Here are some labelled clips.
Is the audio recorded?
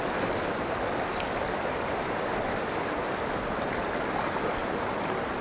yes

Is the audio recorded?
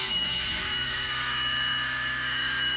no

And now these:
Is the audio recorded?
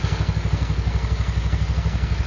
no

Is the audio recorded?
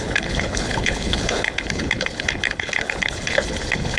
no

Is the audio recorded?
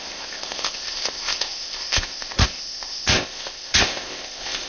no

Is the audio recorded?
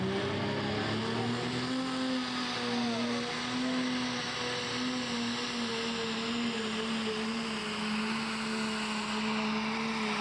yes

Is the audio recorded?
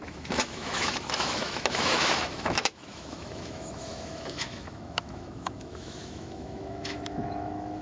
no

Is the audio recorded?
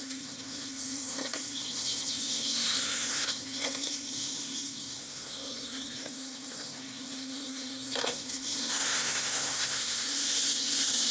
no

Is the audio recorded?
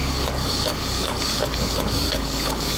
no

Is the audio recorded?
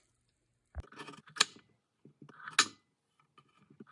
yes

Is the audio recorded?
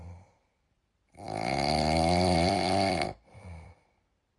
no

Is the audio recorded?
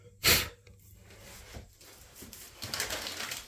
no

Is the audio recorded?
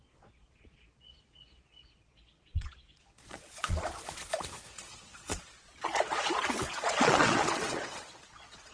no